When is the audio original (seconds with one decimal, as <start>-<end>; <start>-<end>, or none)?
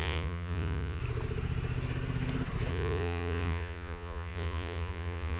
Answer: 1.0-2.7